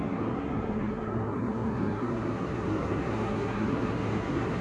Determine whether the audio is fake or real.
fake